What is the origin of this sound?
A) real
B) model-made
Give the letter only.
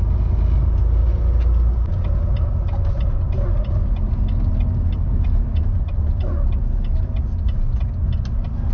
A